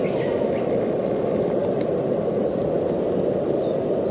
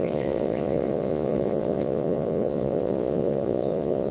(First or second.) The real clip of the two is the first